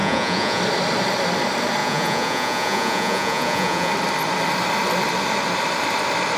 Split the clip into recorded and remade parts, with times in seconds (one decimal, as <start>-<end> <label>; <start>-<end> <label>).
0.0-0.6 remade; 0.6-1.8 recorded; 1.8-3.9 remade; 3.9-6.4 recorded